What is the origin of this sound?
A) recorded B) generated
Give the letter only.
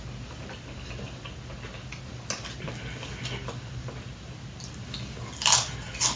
A